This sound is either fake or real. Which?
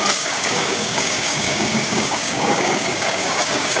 fake